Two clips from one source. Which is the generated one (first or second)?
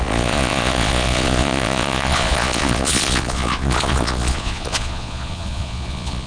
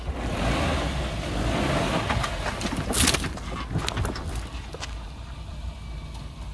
first